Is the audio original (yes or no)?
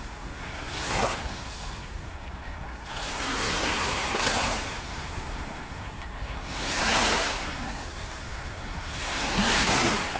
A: no